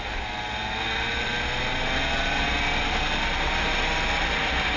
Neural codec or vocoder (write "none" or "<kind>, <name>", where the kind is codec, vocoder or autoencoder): none